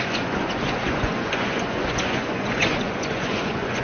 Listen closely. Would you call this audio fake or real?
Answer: fake